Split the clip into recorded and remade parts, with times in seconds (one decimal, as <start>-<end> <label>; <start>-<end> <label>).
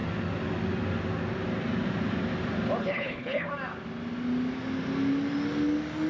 0.0-2.8 recorded; 2.8-3.5 remade; 3.5-6.1 recorded